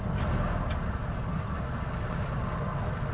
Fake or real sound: real